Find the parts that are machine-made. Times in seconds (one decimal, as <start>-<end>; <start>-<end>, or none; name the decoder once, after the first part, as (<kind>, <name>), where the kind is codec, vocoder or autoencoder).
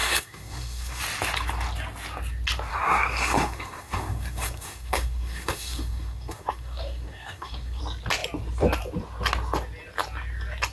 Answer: 0.0-1.0 (codec, SNAC); 2.7-7.8